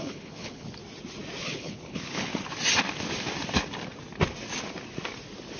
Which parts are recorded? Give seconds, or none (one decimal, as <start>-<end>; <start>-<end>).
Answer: 0.8-1.4; 2.3-5.6